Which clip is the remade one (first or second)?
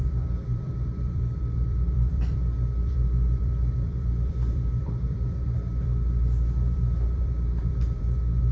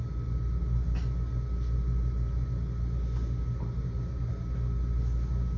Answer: first